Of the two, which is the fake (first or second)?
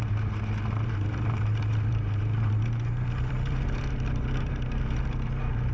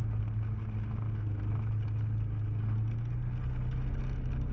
first